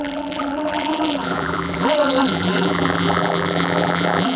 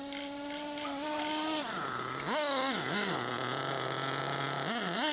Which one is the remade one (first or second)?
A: first